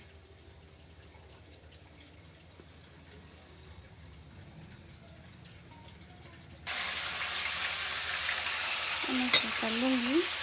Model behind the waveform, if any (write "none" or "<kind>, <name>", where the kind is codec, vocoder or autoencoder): none